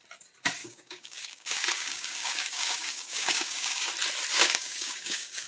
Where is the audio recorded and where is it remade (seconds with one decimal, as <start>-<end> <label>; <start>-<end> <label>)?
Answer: 0.0-0.6 recorded; 0.6-3.9 remade; 3.9-4.3 recorded; 4.3-5.5 remade

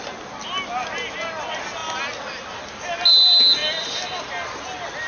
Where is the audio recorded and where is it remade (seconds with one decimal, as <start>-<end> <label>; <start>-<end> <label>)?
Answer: 0.0-5.1 recorded